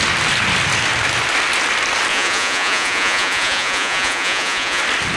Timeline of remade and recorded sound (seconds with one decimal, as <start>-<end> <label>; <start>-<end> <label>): 0.0-2.1 recorded; 2.1-4.8 remade; 4.8-5.2 recorded